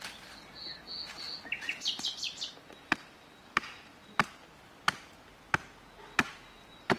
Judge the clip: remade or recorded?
recorded